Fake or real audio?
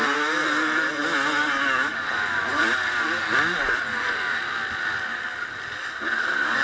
real